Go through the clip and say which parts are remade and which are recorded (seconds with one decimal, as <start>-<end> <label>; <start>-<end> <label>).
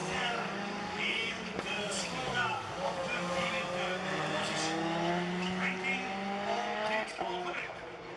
0.0-3.6 remade; 3.6-8.2 recorded